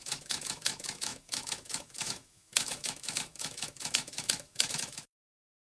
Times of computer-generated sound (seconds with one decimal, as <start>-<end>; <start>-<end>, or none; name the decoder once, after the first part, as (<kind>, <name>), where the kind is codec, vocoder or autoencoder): 0.0-5.6 (autoencoder, DAC-VAE)